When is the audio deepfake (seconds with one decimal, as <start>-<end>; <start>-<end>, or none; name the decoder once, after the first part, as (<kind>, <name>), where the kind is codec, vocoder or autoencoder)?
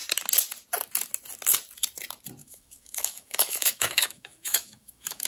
2.4-5.3 (autoencoder, DAC-VAE)